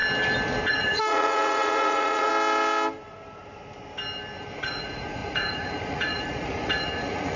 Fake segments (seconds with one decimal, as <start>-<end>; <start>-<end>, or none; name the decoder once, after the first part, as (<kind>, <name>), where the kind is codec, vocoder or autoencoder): 0.7-2.3 (vocoder, Vocos); 4.6-7.4